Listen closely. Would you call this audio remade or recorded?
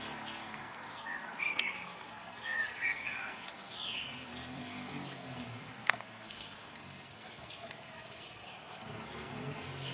remade